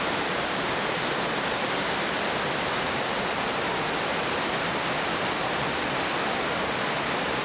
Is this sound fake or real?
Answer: real